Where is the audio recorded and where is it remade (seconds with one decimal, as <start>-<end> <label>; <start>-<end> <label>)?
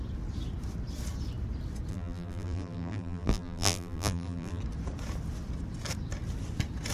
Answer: 0.0-1.9 recorded; 1.9-4.6 remade; 4.6-6.9 recorded